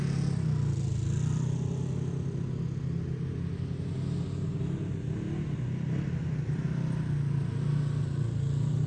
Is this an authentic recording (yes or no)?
yes